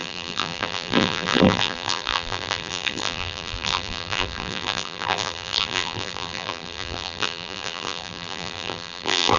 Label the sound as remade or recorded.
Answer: remade